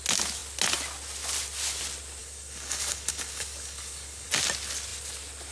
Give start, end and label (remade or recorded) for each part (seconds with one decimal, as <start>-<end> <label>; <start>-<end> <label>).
0.0-2.2 recorded; 2.2-4.3 remade; 4.3-5.5 recorded